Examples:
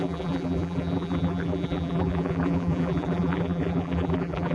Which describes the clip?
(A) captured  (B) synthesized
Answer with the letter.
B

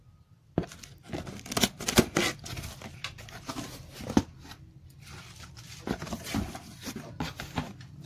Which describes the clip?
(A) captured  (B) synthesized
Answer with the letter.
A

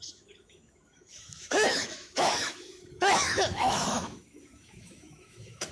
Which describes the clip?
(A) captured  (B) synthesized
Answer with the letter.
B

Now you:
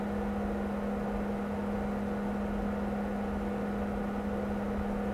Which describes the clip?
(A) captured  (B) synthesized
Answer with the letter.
A